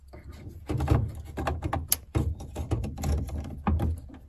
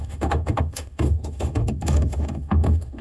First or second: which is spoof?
second